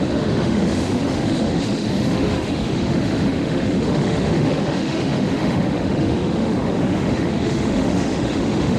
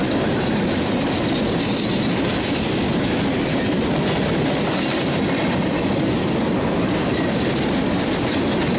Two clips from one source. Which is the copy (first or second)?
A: first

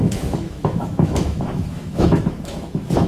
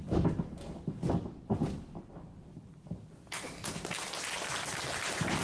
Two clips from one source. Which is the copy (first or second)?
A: first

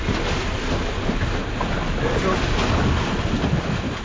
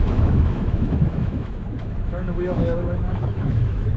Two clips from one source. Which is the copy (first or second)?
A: second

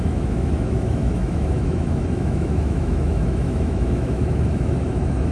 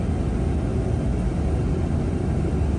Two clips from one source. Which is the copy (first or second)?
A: first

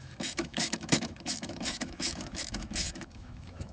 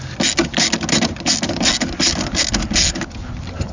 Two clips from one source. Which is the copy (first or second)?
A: first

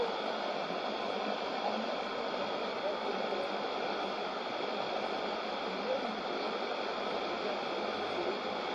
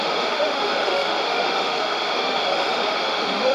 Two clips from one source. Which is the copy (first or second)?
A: second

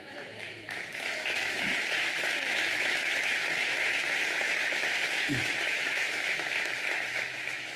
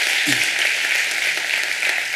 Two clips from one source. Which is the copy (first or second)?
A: first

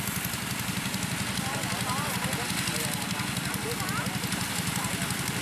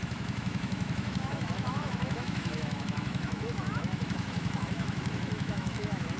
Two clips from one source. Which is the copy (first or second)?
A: second